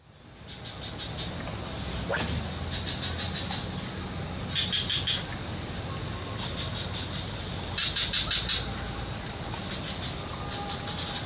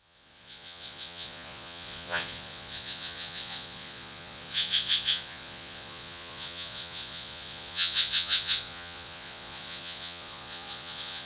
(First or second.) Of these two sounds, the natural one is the first